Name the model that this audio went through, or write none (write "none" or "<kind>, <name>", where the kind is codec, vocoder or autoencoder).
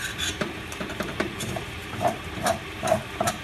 vocoder, BigVGAN v2